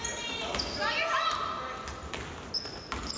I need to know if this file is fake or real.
real